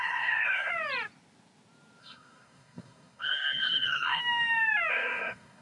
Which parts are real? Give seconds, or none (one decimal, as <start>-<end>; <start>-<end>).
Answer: 0.7-2.0; 4.2-4.9